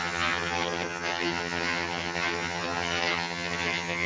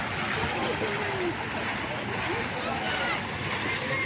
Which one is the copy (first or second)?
first